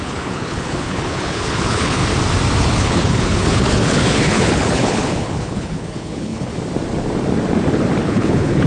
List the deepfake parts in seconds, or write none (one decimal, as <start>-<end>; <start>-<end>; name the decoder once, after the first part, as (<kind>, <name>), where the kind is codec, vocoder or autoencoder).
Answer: 0.0-2.0 (codec, HILCodec); 2.6-6.5; 8.0-8.7